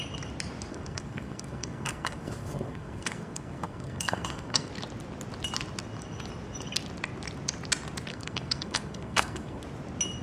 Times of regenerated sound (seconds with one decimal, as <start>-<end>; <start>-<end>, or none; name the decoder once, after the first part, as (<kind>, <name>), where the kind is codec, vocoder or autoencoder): 0.7-4.7 (codec, SNAC); 8.1-9.6